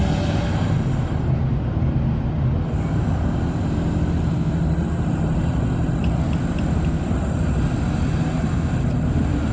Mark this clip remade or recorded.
recorded